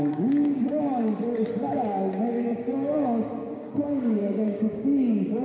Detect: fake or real fake